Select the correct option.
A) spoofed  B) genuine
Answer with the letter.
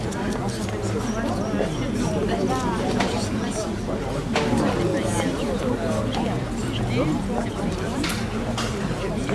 B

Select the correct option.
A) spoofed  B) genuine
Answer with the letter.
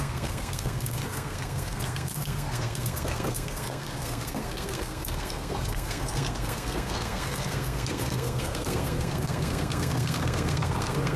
A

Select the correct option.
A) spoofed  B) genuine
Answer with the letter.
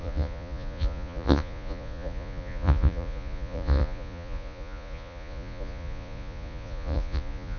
A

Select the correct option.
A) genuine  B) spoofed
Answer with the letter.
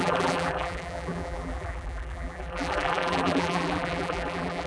B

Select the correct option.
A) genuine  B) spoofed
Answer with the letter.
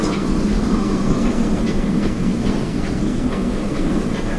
B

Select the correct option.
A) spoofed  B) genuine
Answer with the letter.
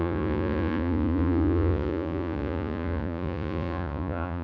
A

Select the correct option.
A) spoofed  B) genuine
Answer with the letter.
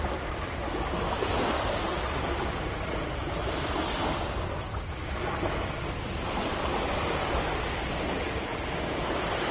B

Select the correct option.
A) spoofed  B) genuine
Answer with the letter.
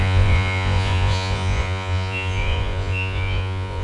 A